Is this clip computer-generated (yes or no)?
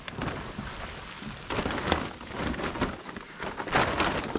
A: no